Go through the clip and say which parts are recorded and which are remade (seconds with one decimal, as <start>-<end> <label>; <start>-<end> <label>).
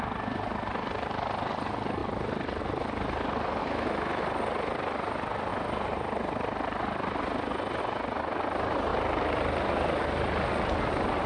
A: 0.0-3.6 recorded; 3.6-4.2 remade; 4.2-11.3 recorded